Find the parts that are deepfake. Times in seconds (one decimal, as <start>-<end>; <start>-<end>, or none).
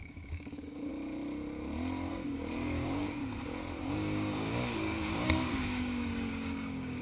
0.0-0.9; 2.1-3.2; 3.8-7.0